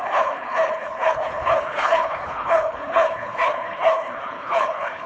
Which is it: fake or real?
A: fake